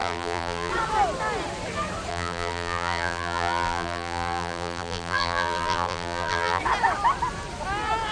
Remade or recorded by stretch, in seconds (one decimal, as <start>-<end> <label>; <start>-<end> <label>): 0.0-0.7 remade; 0.7-2.1 recorded; 2.1-6.6 remade; 6.6-8.1 recorded